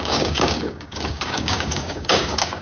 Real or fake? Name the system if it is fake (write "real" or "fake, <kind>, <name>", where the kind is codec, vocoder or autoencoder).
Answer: fake, codec, DAC